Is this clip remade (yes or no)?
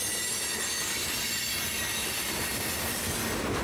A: no